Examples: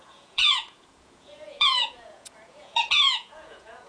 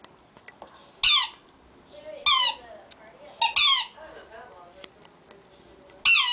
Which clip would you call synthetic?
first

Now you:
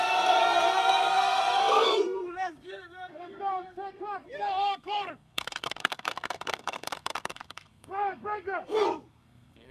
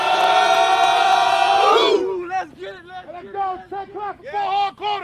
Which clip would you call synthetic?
first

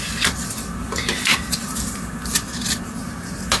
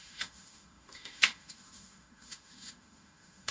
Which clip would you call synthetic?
second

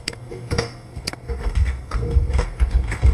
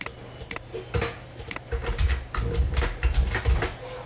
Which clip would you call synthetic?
first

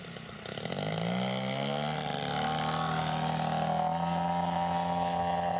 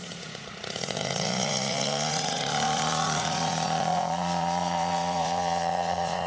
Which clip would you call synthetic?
second